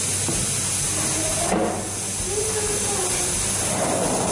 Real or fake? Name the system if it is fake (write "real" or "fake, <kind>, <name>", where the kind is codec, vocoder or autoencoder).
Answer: real